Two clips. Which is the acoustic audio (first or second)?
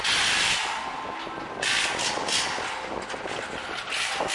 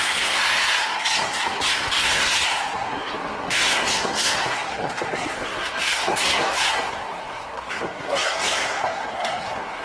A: first